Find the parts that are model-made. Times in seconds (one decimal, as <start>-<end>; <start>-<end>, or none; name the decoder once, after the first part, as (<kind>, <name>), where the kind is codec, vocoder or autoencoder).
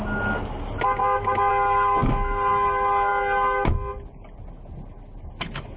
none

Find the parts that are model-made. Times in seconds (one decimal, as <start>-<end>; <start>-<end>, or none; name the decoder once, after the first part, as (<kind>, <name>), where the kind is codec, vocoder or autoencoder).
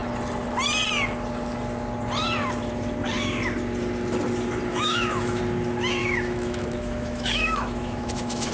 4.7-5.4 (autoencoder, DAC-VAE); 6.0-8.5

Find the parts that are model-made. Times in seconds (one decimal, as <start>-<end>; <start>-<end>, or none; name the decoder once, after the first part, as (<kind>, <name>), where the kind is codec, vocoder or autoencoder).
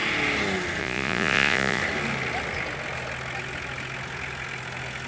0.8-1.8 (vocoder, Vocos)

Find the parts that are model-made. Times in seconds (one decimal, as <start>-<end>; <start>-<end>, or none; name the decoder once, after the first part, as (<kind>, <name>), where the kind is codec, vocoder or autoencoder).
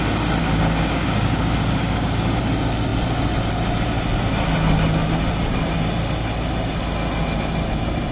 0.4-2.4 (codec, DAC)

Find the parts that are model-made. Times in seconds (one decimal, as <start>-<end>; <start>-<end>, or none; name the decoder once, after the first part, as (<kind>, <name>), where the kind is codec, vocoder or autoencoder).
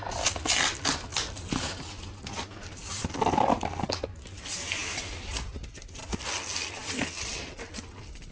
none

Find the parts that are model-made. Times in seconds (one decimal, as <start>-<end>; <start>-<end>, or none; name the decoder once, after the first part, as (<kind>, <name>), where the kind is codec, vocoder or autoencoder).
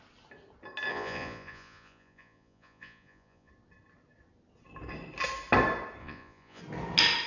0.9-3.5 (vocoder, Vocos); 6.0-6.6